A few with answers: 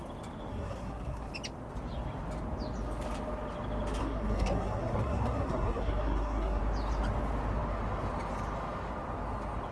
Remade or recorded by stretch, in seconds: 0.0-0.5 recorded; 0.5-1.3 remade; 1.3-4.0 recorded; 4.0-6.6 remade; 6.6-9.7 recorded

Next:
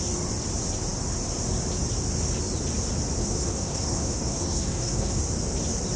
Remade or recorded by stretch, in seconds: 0.0-3.2 recorded; 3.2-5.2 remade; 5.2-6.0 recorded

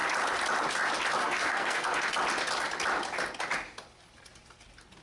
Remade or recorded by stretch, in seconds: 0.0-1.2 recorded; 1.2-2.1 remade; 2.1-5.0 recorded

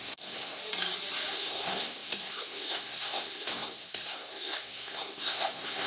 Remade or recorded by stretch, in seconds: 0.0-0.6 remade; 0.6-1.3 recorded; 1.3-5.9 remade

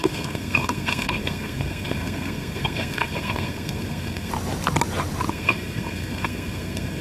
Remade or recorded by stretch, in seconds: 0.0-4.3 remade; 4.3-5.3 recorded; 5.3-7.0 remade

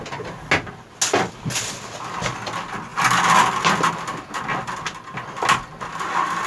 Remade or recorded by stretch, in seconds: 0.0-6.5 recorded